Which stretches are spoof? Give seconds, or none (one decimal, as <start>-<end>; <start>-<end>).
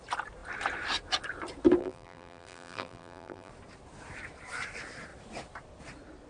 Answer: 1.8-3.5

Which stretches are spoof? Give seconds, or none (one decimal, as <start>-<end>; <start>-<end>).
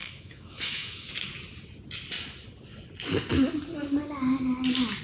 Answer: 0.0-1.1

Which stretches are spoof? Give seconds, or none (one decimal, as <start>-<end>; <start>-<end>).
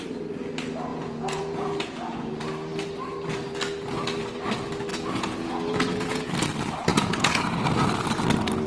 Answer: 0.9-2.4; 4.9-6.3; 6.9-7.4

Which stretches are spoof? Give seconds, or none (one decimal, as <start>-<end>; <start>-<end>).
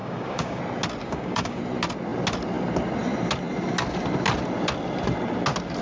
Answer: 0.0-0.6; 1.0-1.6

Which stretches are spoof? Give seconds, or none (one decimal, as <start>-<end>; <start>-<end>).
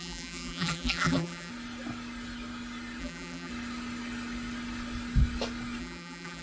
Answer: 0.0-1.5; 3.0-3.5; 5.8-6.4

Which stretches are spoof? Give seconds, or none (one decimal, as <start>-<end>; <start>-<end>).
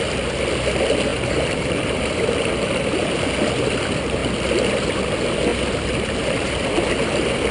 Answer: 1.1-2.3; 5.5-6.5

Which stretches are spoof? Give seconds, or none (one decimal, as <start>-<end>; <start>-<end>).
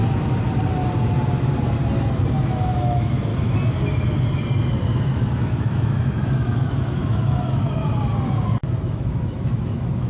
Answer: 2.4-3.3; 5.0-7.8; 8.6-10.1